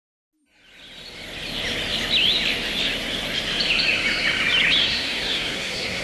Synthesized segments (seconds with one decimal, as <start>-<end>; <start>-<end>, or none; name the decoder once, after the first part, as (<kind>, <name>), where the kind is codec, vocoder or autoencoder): 4.8-6.0 (codec, SNAC)